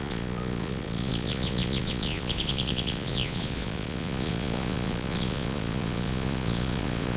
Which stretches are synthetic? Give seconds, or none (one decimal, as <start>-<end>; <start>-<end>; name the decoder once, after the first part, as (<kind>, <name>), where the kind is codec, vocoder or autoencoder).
0.0-7.2 (vocoder, Vocos)